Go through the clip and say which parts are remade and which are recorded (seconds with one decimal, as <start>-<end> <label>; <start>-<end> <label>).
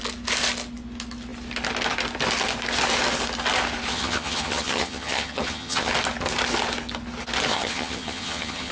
0.0-3.9 recorded; 3.9-5.9 remade; 5.9-7.5 recorded; 7.5-8.7 remade